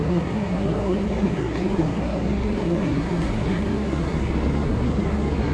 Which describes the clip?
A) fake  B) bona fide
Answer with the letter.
A